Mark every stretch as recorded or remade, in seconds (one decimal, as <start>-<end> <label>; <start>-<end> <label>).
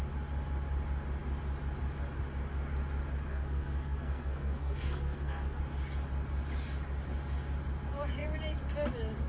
0.0-3.3 recorded; 3.3-5.6 remade; 5.6-9.3 recorded